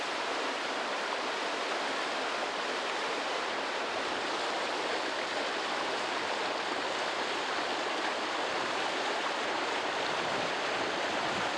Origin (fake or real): fake